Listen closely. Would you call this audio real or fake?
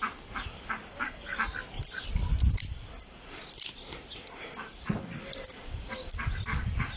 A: real